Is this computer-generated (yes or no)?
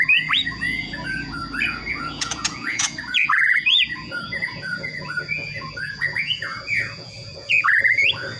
yes